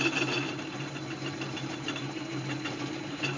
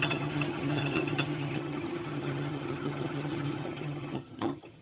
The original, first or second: first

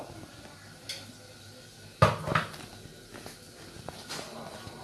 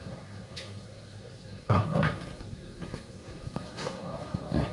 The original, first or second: first